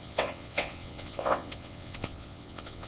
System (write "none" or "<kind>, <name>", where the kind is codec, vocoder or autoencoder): vocoder, WaveNeXt